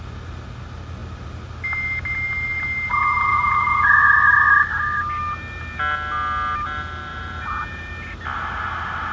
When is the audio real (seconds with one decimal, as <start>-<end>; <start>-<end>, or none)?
0.0-3.3; 4.1-7.1; 7.9-9.1